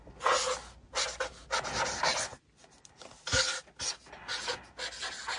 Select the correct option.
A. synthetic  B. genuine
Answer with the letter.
B